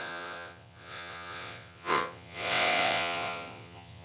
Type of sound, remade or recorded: remade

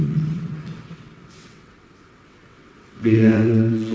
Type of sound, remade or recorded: remade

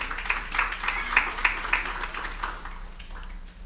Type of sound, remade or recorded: recorded